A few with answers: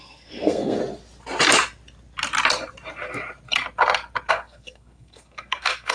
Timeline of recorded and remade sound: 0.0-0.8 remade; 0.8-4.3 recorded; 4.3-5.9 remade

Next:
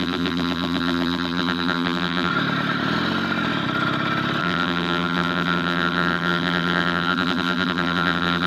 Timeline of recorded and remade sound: 0.0-2.3 remade; 2.3-4.4 recorded; 4.4-8.5 remade

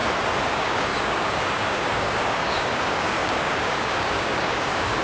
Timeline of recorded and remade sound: 0.0-0.5 recorded; 0.5-5.0 remade

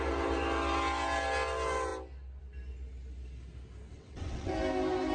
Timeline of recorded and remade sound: 0.0-3.9 recorded; 3.9-4.5 remade; 4.5-5.1 recorded

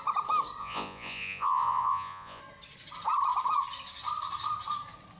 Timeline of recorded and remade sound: 0.0-0.6 recorded; 0.6-2.4 remade; 2.4-5.2 recorded

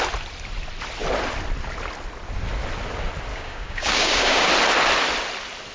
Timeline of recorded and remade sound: 0.0-3.3 recorded; 3.3-4.5 remade; 4.5-5.7 recorded

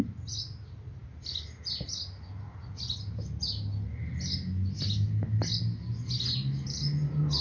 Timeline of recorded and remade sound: 0.0-7.4 recorded